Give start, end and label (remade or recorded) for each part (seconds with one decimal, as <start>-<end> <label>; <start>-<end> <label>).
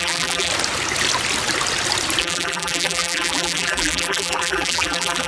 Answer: 0.0-0.5 remade; 0.5-2.2 recorded; 2.2-5.3 remade